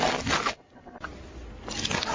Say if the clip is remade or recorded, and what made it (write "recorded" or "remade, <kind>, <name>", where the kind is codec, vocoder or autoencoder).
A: recorded